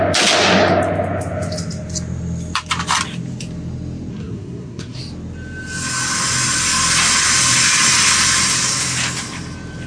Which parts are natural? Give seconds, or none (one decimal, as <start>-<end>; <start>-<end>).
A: 0.0-4.1; 5.0-9.9